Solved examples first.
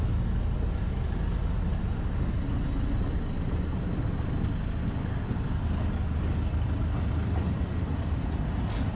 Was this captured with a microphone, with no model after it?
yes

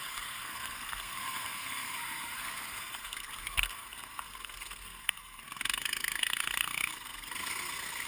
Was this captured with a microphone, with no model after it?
no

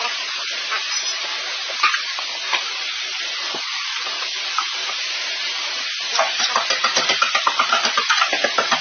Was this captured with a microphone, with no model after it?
no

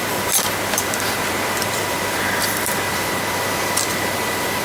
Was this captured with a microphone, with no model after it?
no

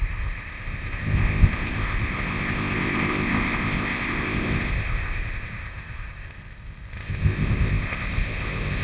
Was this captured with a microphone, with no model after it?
no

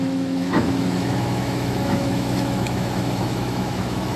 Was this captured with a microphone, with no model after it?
no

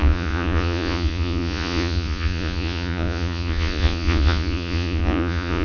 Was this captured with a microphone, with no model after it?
no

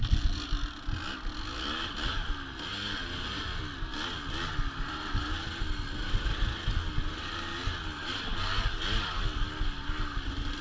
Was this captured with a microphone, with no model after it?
yes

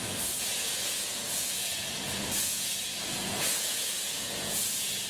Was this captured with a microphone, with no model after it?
no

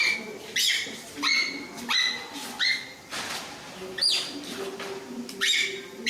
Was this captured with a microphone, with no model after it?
yes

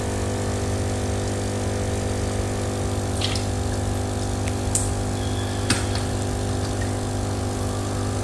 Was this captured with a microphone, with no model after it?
yes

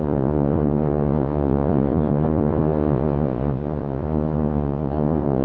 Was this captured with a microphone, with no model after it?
no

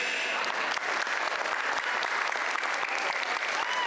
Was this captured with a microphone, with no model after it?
yes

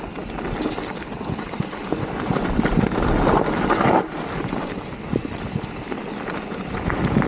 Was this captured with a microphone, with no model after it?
yes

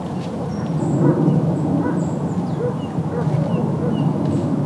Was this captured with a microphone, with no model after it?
yes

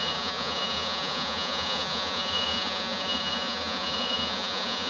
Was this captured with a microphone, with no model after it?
no